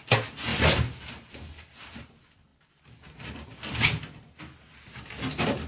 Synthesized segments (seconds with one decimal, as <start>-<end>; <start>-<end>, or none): none